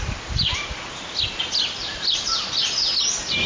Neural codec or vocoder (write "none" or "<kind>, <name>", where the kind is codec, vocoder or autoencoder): none